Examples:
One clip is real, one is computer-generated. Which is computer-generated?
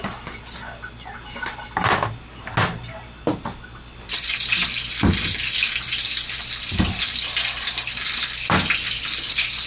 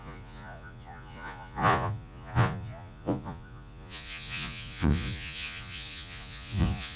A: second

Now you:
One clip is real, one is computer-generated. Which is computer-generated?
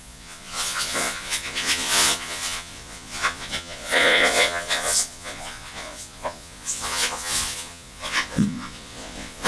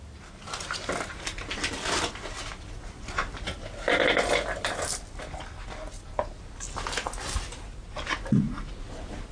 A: first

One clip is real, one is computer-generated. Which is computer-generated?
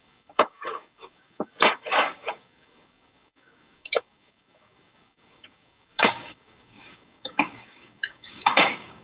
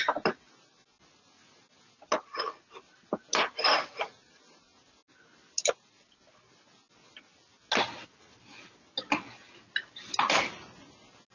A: first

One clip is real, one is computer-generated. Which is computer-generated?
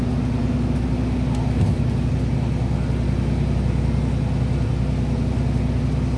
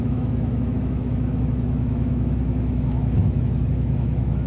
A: second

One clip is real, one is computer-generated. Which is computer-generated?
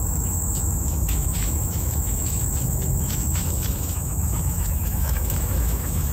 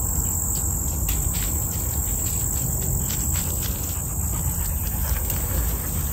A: first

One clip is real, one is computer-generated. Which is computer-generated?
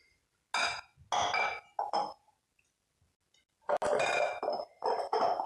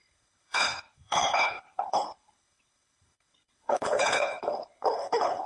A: second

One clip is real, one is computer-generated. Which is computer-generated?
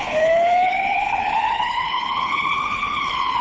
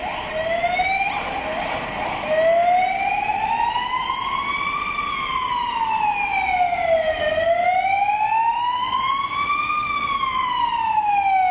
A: first